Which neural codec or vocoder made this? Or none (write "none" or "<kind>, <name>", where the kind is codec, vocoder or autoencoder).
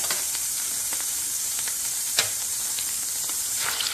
vocoder, BigVGAN v2